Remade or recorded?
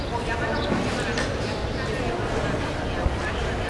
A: recorded